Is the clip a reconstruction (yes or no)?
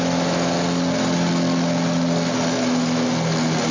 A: no